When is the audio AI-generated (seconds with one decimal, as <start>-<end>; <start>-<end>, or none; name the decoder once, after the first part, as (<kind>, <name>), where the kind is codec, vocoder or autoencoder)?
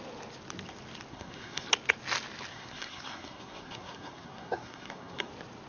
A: 1.1-1.7 (codec, SNAC); 2.5-5.3